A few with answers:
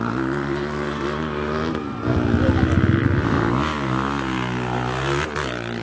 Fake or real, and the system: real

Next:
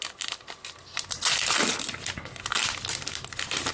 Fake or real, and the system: real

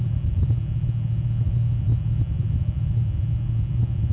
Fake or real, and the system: real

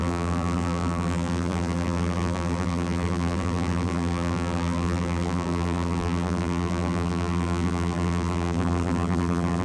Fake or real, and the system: fake, vocoder, BigVGAN v2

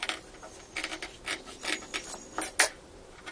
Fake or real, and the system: real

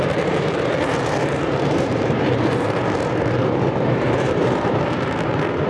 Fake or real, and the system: fake, vocoder, BigVGAN v2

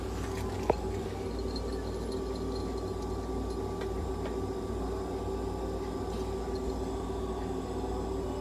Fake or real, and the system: real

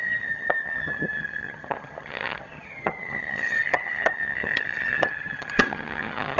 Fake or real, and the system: fake, vocoder, HiFi-GAN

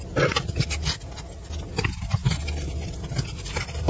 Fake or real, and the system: real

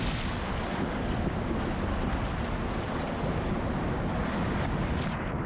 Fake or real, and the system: real